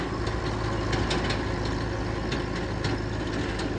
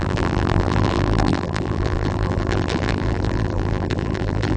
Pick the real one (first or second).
first